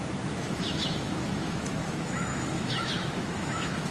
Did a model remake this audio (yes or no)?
yes